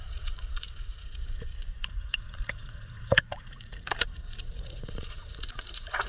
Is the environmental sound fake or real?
fake